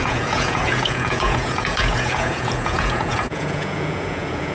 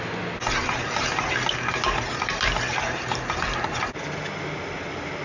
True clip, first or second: second